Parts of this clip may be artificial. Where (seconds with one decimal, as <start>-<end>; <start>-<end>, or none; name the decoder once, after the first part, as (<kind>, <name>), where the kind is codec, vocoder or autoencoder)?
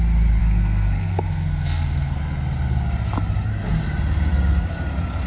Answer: 0.4-2.2 (codec, SNAC)